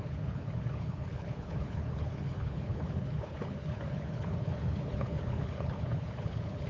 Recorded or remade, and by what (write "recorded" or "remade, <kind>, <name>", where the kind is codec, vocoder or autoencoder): remade, codec, HILCodec